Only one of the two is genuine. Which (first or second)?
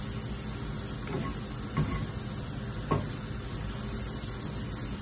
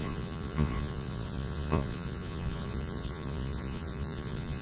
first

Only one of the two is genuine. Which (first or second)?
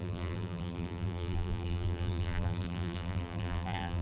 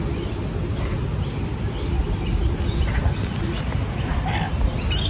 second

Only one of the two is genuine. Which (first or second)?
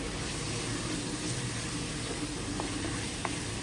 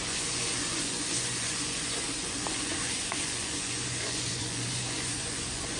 first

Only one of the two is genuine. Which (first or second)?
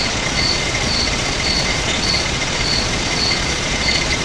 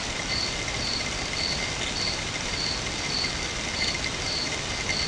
second